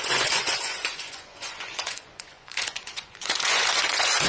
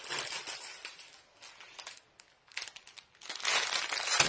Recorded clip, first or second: second